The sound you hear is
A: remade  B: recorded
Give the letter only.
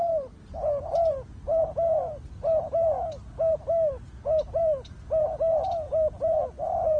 A